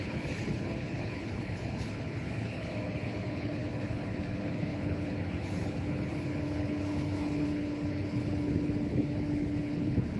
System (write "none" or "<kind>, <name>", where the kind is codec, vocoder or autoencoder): codec, HILCodec